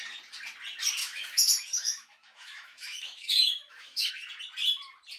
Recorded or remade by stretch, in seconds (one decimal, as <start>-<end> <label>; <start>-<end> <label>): 0.0-1.0 recorded; 1.0-4.1 remade; 4.1-5.2 recorded